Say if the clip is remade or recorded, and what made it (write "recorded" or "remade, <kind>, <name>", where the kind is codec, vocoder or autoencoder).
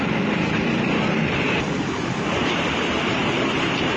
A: remade, vocoder, BigVGAN v2